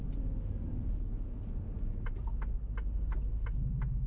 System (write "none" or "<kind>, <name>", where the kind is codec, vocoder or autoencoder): none